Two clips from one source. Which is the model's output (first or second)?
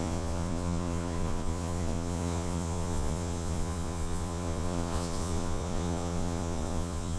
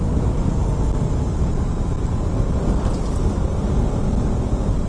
first